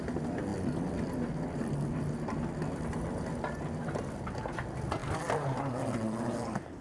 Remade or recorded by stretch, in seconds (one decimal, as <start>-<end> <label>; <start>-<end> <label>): 0.0-6.8 recorded